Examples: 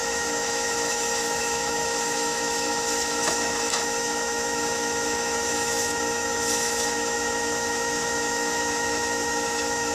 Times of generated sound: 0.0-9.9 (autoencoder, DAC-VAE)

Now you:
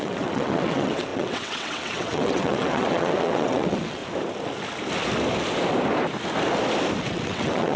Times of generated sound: 0.0-4.0 (vocoder, WaveNeXt); 7.0-7.8